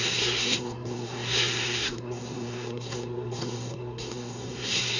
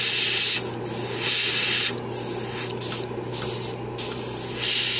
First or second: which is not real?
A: first